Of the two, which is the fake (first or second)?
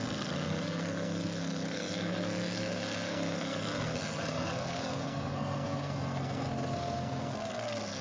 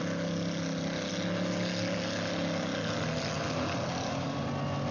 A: first